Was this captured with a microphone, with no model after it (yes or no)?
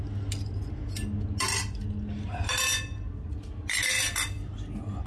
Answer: yes